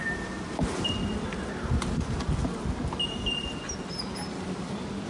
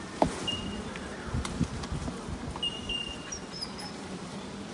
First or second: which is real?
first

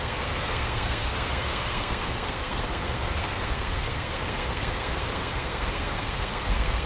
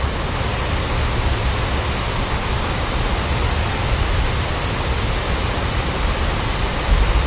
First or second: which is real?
second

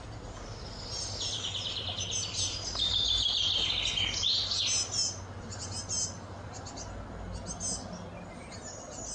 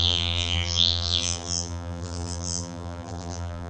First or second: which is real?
first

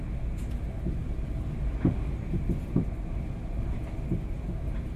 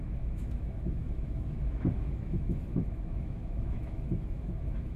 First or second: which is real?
first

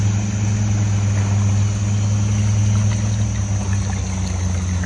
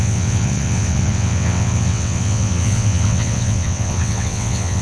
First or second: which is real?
first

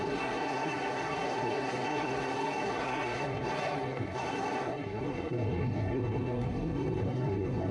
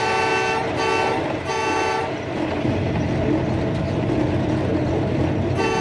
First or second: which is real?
second